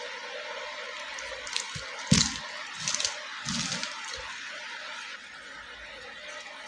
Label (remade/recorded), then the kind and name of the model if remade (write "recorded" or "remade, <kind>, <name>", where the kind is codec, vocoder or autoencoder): recorded